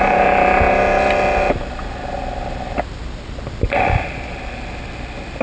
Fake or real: real